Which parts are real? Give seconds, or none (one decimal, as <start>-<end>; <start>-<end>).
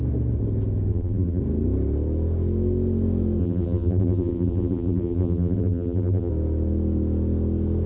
0.0-0.9; 1.4-3.4; 6.3-7.9